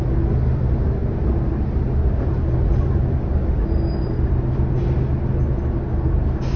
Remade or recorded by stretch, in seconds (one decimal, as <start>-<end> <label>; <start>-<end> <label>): 0.0-6.6 recorded